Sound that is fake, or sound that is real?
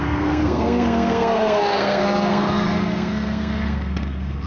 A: fake